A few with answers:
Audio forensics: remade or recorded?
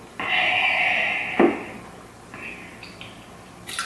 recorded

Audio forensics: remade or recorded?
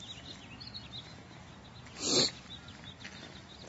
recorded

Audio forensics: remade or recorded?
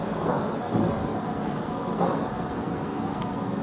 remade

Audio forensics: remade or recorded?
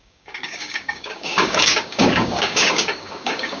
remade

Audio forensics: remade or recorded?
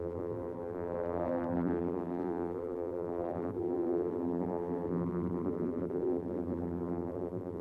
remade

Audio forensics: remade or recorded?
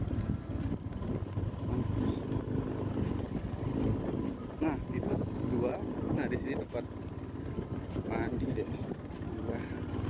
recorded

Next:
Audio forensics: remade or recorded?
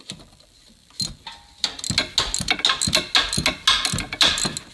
recorded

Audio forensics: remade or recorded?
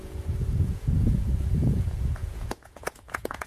remade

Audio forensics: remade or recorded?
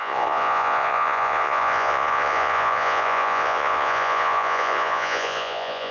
remade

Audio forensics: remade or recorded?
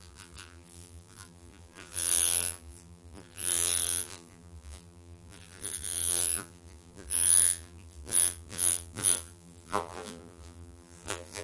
remade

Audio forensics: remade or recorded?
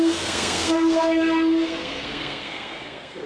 remade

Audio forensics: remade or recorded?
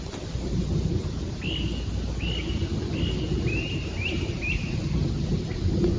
recorded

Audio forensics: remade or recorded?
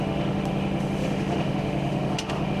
remade